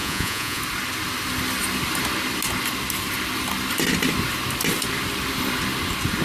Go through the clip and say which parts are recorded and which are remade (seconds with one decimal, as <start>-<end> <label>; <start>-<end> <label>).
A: 0.0-0.6 remade; 0.6-6.2 recorded